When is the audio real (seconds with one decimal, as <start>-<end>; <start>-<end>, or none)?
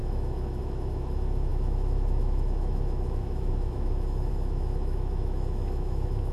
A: none